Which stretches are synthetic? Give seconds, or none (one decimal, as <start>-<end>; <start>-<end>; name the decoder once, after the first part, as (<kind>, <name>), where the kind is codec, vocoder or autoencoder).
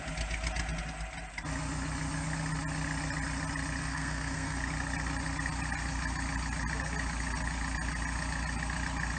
3.8-4.6 (codec, SNAC)